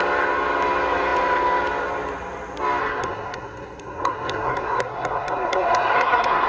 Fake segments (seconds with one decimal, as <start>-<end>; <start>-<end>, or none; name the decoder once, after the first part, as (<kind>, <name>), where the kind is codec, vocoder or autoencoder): 2.8-6.5 (codec, SNAC)

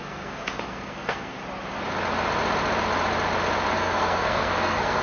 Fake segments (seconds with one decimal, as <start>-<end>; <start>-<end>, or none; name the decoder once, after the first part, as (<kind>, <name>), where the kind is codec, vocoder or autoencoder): 0.0-1.4 (codec, SNAC); 3.7-5.0

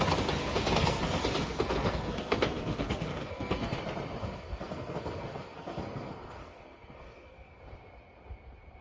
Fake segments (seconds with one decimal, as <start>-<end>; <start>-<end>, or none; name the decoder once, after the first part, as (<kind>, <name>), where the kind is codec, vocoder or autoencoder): 0.4-1.0 (codec, SNAC); 1.4-3.7; 4.2-7.6

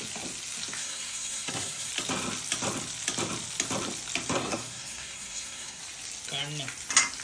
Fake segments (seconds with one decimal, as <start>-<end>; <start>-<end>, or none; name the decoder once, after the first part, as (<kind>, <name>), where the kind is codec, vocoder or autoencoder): 0.8-1.9 (codec, SNAC); 4.4-5.8